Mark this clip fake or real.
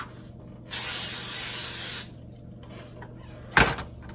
real